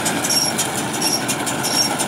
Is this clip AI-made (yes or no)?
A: no